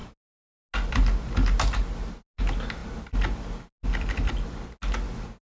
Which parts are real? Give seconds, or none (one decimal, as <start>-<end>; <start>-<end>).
0.0-5.5

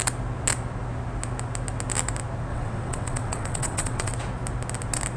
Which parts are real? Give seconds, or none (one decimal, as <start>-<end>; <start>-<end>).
0.0-2.5; 4.1-5.2

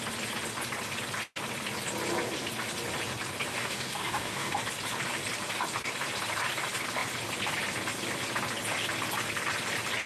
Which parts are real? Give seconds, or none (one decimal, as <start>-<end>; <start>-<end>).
0.0-3.5; 4.6-10.1

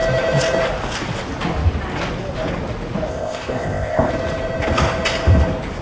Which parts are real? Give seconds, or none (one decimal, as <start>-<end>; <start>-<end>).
0.0-3.1; 4.1-5.8

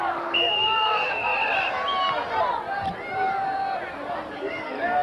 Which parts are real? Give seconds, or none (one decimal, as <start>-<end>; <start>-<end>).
1.3-4.3

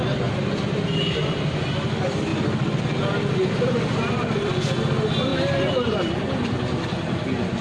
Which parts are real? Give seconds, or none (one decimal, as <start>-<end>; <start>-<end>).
0.0-7.6